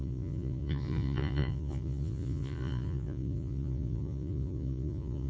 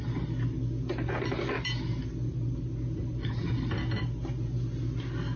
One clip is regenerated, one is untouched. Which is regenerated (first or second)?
first